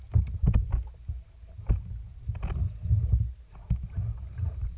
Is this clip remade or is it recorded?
recorded